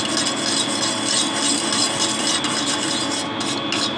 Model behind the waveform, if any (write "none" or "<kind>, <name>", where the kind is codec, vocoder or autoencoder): none